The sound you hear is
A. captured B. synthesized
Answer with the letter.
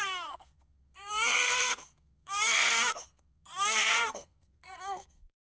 B